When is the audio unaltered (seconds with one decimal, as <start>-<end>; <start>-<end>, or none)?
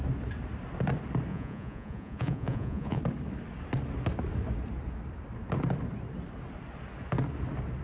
0.0-1.3; 3.0-7.8